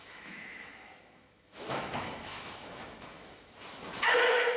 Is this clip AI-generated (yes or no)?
yes